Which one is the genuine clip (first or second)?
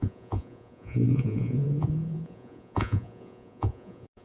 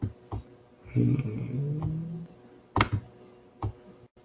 second